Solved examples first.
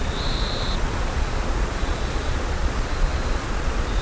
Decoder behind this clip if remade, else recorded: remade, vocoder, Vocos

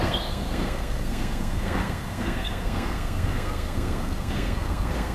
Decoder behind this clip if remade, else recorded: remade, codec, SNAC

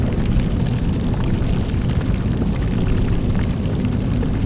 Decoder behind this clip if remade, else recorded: recorded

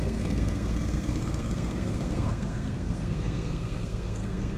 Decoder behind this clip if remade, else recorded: remade, codec, SNAC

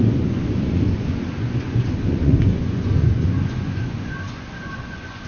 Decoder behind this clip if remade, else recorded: remade, vocoder, Vocos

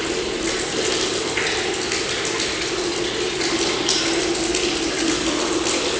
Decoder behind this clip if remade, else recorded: recorded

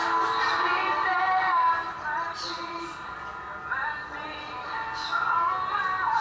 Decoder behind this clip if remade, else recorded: recorded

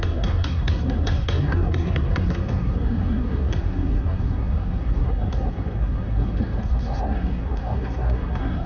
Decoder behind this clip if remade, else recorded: remade, codec, SNAC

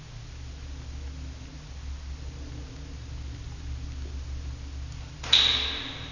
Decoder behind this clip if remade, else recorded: recorded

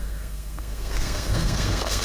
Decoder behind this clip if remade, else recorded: remade, codec, SNAC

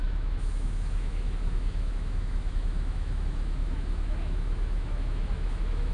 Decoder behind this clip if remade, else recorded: remade, autoencoder, DAC-VAE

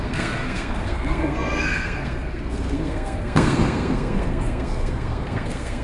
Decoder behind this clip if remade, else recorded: remade, codec, SNAC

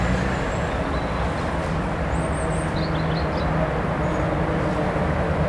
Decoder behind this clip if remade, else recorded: recorded